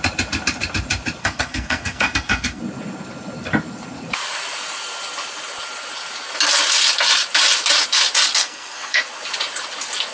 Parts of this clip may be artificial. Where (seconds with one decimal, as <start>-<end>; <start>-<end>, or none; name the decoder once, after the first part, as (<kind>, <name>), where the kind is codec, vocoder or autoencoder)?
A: 1.2-2.6 (codec, SNAC); 8.4-9.0